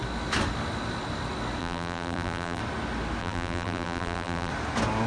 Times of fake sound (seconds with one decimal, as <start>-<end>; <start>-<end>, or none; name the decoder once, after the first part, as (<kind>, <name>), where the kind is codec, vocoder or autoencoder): 1.6-2.6 (vocoder, BigVGAN v2); 3.2-4.5